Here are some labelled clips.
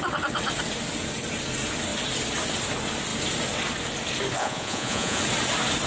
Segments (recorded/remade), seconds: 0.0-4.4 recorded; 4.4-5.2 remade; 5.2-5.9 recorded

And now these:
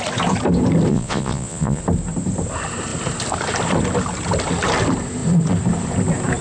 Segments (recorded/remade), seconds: 0.0-0.9 recorded; 0.9-1.8 remade; 1.8-6.4 recorded

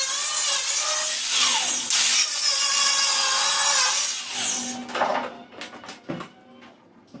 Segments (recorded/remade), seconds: 0.0-2.3 recorded; 2.3-3.7 remade; 3.7-7.2 recorded

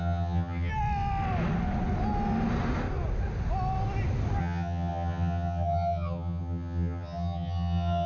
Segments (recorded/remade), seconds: 0.0-0.7 remade; 0.7-4.4 recorded; 4.4-8.1 remade

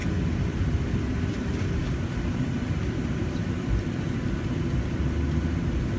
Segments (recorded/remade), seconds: 0.0-6.0 recorded

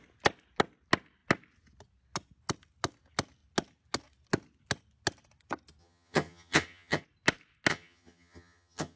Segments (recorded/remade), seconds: 0.0-5.8 recorded; 5.8-7.0 remade; 7.0-7.7 recorded; 7.7-9.0 remade